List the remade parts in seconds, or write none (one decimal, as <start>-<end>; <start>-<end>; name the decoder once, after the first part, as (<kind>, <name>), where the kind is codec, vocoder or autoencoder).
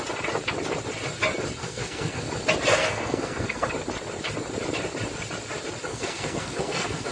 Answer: 1.6-2.2 (codec, SNAC); 2.7-3.7; 5.9-7.1